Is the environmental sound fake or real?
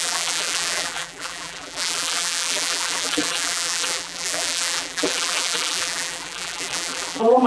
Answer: fake